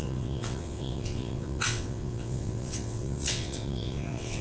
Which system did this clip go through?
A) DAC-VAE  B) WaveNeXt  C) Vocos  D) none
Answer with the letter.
B